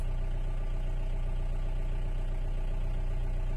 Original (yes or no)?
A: yes